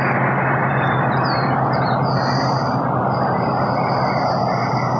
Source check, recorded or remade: recorded